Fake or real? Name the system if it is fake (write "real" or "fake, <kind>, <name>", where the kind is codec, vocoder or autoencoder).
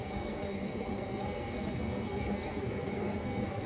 fake, codec, SNAC